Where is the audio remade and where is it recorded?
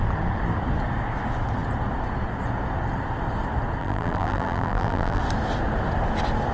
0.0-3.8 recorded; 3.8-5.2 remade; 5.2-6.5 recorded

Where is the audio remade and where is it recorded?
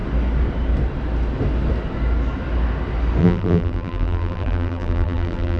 0.0-3.2 recorded; 3.2-5.6 remade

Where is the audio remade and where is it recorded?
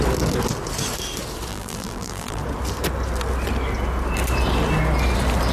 0.0-1.5 recorded; 1.5-2.4 remade; 2.4-5.5 recorded